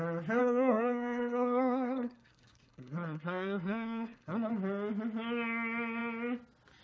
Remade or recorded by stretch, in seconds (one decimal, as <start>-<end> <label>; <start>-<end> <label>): 0.0-0.4 recorded; 0.4-4.5 remade; 4.5-6.8 recorded